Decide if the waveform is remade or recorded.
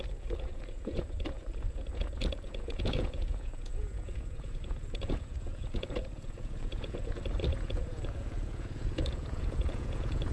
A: remade